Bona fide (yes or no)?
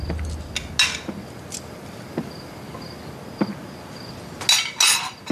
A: yes